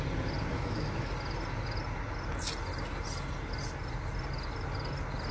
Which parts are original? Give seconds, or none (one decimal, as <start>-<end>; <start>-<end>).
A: 0.0-0.5; 1.1-5.3